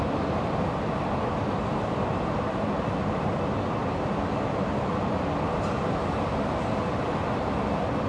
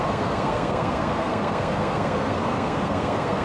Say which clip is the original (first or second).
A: first